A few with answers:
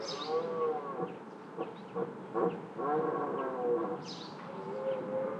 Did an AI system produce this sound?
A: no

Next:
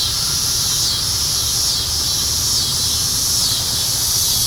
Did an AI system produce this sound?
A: no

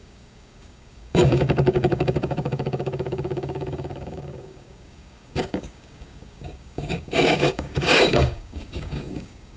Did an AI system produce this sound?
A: yes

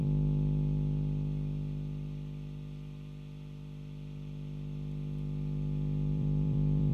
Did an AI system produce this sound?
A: yes